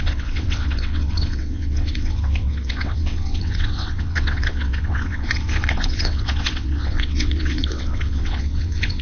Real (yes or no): no